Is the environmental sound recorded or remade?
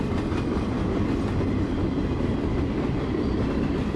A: recorded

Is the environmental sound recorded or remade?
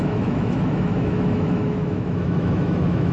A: remade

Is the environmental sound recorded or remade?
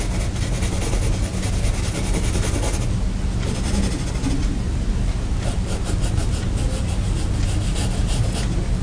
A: recorded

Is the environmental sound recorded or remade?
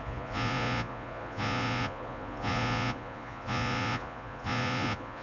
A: remade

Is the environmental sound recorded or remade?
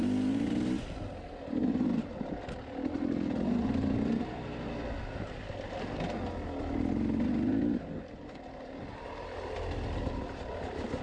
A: recorded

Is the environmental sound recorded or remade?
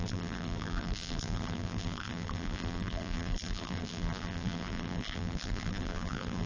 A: remade